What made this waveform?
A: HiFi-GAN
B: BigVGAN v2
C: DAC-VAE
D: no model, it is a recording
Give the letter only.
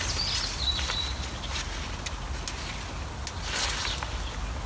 D